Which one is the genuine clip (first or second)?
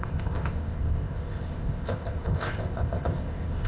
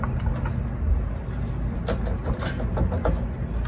second